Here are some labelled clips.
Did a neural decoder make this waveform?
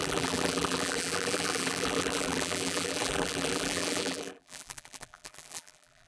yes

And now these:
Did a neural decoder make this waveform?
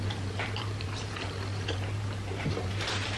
yes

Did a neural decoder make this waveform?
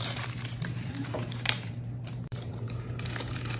yes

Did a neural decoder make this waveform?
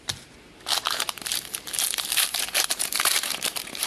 yes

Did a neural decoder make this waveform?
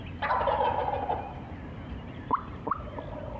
no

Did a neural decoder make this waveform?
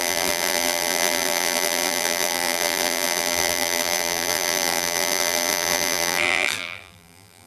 yes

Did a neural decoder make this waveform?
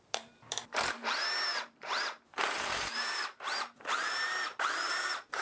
yes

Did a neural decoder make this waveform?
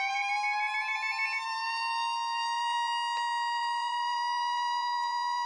yes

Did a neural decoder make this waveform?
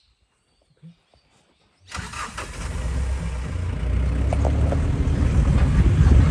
no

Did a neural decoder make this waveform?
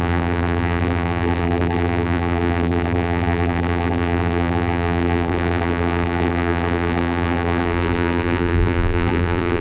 yes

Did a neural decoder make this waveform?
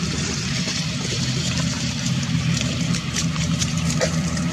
yes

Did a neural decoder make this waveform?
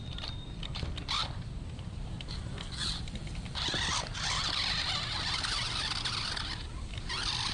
yes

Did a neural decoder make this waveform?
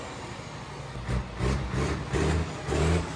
no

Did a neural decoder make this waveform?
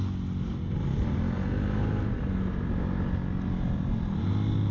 no